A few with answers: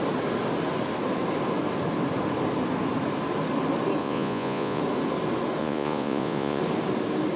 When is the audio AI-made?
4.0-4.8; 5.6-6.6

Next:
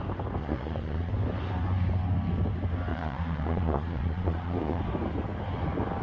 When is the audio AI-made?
0.4-1.1; 2.9-4.8

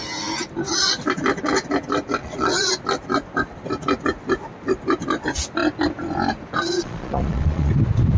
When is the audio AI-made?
2.2-2.7; 6.8-7.7